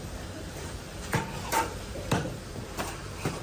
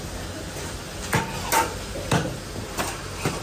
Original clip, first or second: second